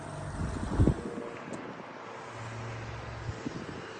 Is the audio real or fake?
real